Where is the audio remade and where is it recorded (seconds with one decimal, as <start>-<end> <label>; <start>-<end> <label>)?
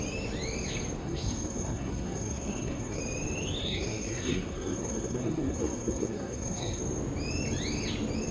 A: 0.0-1.0 recorded; 1.0-3.0 remade; 3.0-3.6 recorded; 3.6-6.8 remade; 6.8-8.3 recorded